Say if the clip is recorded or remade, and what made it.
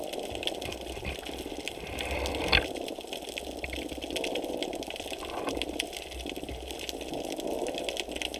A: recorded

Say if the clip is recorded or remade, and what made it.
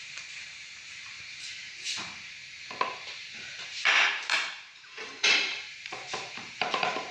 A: remade, vocoder, BigVGAN v2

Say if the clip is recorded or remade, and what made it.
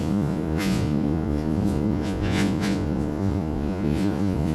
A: remade, vocoder, Vocos